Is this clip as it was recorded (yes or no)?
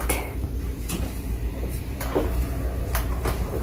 no